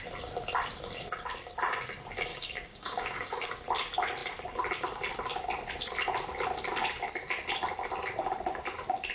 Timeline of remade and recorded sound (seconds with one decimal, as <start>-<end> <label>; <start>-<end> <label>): 0.0-2.3 recorded; 2.3-3.5 remade; 3.5-9.1 recorded